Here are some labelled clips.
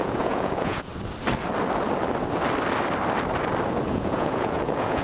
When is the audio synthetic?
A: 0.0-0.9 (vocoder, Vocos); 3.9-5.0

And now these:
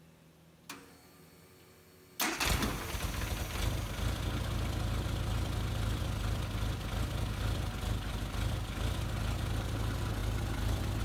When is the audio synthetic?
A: none

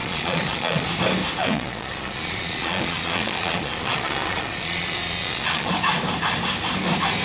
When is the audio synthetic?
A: 0.0-0.9 (vocoder, Vocos); 1.4-5.7